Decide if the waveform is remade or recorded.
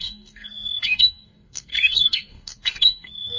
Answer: remade